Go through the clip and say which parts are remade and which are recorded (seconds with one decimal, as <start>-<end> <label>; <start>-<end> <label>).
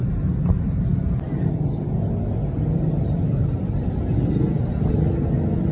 0.0-5.7 recorded